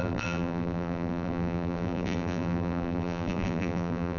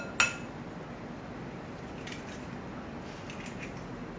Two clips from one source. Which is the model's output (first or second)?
first